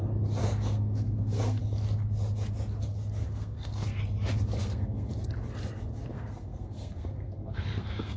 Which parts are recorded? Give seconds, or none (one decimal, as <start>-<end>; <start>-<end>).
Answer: 0.0-0.4; 1.6-3.2; 4.0-4.6; 5.1-6.1